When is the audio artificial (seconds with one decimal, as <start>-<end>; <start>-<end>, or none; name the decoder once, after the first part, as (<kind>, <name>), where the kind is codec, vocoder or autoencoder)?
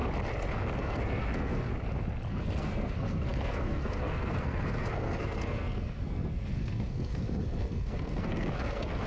0.8-1.7 (codec, SNAC); 2.3-9.1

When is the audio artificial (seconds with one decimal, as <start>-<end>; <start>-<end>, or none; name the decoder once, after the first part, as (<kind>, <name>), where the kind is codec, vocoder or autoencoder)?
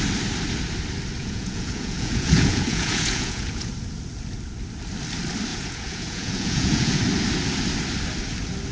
1.2-3.7 (vocoder, Vocos); 5.5-7.0